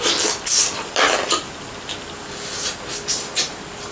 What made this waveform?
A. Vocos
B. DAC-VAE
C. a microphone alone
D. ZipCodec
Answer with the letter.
C